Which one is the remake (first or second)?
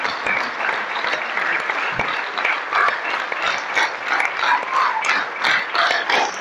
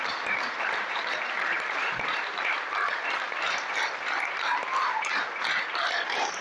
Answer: second